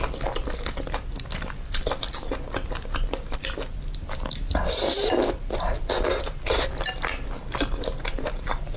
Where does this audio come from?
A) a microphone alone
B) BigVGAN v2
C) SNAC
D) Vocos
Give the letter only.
A